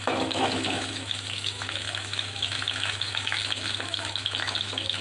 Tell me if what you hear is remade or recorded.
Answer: remade